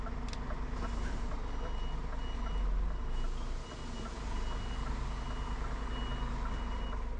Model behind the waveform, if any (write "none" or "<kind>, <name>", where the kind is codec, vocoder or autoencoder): none